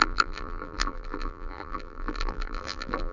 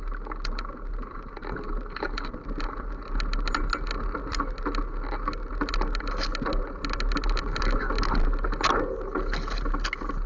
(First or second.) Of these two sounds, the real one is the second